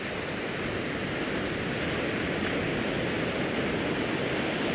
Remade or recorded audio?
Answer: recorded